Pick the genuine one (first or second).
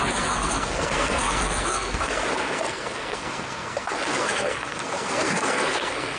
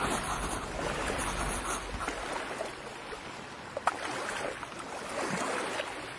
second